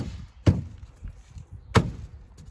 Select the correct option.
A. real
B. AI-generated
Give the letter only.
A